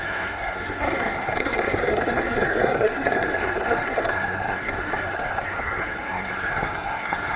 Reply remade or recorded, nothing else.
remade